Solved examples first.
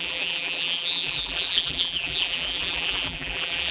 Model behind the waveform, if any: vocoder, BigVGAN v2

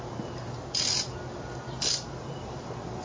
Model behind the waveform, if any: none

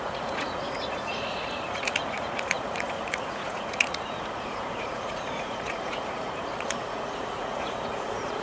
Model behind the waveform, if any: vocoder, Vocos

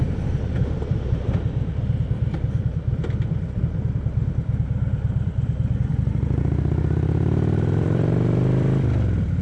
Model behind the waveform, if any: vocoder, BigVGAN v2